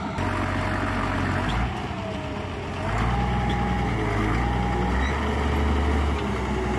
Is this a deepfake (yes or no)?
no